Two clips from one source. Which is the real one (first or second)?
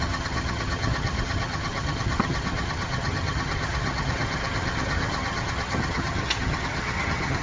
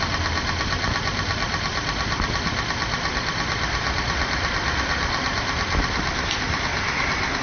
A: second